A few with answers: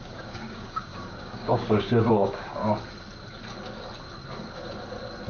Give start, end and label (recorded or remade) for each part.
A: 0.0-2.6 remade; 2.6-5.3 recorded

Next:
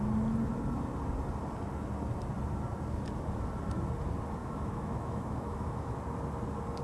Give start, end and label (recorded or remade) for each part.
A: 0.0-4.4 recorded; 4.4-6.0 remade; 6.0-6.8 recorded

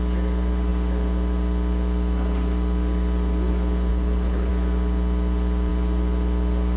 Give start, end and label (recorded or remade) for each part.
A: 0.0-3.9 recorded; 3.9-4.5 remade; 4.5-6.8 recorded

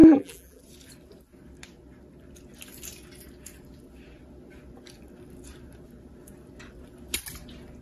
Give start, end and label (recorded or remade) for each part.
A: 0.0-0.6 remade; 0.6-7.8 recorded